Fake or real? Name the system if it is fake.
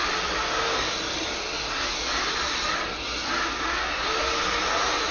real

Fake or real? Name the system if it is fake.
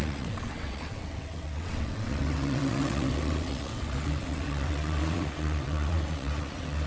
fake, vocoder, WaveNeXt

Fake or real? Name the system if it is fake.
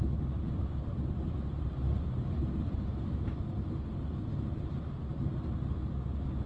real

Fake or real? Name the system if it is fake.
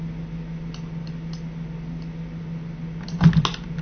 real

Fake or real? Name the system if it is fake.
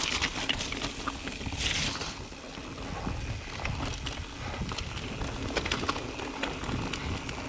real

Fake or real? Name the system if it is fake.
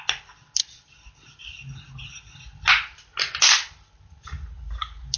real